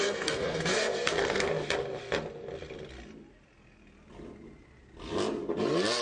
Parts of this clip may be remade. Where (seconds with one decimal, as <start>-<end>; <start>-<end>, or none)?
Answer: 0.0-1.5